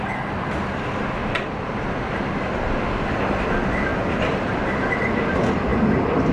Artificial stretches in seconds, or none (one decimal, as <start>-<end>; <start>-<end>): 1.2-2.8; 3.9-4.8